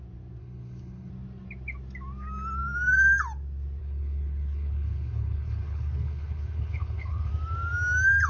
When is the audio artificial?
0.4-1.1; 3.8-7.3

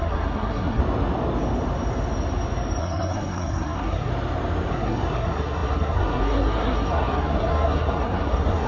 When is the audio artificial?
0.0-0.8; 2.8-4.1; 4.7-8.7

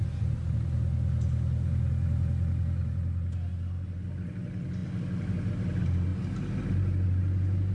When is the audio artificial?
none

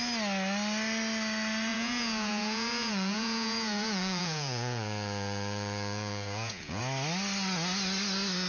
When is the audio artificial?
1.7-6.8

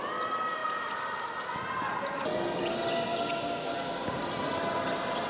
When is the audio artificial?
none

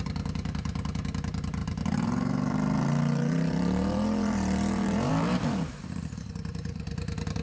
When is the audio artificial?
0.0-7.4

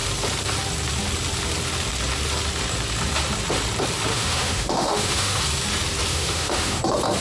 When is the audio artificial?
4.1-5.4; 6.1-6.8

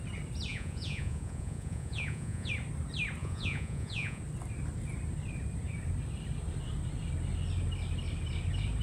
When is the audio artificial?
0.5-2.5; 3.2-4.2